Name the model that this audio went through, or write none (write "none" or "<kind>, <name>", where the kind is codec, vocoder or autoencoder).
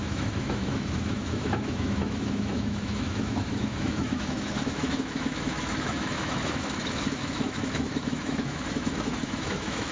autoencoder, DAC-VAE